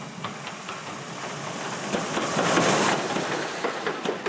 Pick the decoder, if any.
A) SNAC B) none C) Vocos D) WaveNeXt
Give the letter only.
B